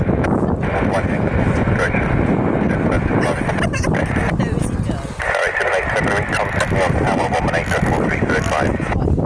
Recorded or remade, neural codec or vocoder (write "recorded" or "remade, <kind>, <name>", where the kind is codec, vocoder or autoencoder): recorded